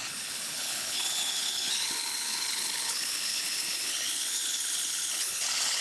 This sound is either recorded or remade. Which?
remade